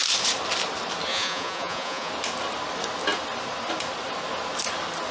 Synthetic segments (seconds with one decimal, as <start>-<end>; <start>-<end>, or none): 1.1-2.1